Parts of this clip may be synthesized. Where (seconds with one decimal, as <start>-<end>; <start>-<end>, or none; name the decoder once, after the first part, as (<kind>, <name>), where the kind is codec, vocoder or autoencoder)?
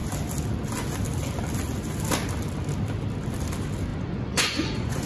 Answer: 3.9-5.1 (vocoder, Vocos)